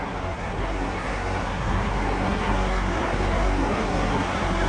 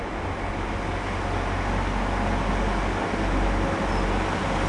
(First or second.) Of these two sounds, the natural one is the second